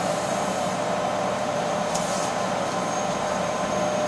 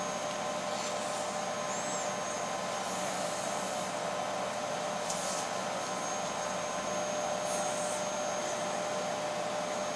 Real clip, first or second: second